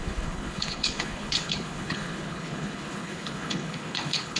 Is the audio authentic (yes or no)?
no